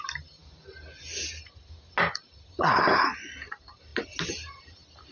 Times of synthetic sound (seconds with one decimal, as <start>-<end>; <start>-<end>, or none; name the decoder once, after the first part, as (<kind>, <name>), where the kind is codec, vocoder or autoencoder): none